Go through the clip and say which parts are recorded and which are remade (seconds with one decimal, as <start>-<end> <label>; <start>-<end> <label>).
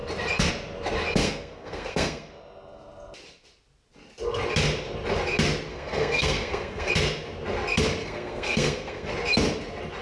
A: 0.0-1.2 recorded; 1.2-2.3 remade; 2.3-5.7 recorded; 5.7-6.9 remade; 6.9-8.0 recorded; 8.0-9.1 remade; 9.1-10.0 recorded